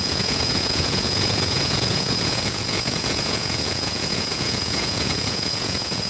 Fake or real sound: fake